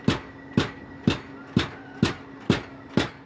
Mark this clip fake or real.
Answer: real